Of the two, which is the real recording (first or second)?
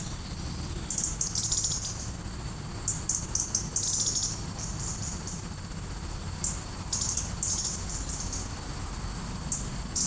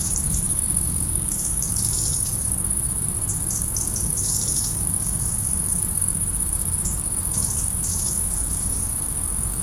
first